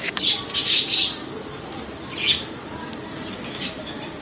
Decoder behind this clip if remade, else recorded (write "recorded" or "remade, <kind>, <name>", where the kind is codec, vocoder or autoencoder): recorded